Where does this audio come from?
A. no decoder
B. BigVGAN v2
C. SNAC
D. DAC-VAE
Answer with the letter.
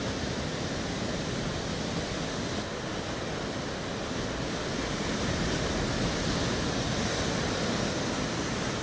A